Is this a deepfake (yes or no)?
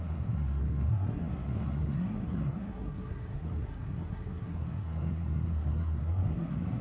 yes